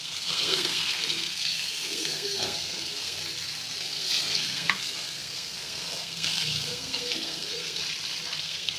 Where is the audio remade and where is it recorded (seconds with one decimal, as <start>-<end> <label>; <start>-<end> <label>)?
0.0-3.2 remade; 3.2-3.8 recorded; 3.8-7.8 remade; 7.8-8.4 recorded; 8.4-8.8 remade